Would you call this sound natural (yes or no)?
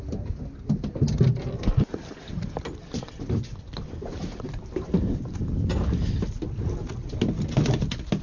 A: yes